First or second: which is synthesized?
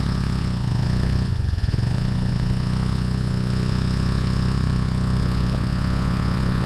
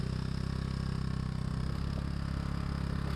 first